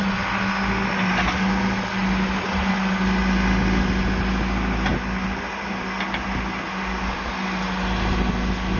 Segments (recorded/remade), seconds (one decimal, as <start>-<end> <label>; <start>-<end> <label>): 0.0-8.8 recorded